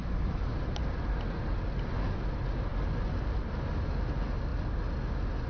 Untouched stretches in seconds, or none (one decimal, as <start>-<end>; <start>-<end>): 1.2-5.5